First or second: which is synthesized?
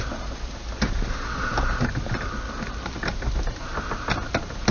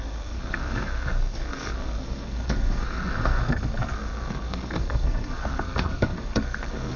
second